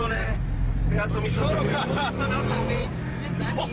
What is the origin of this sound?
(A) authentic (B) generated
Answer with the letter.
B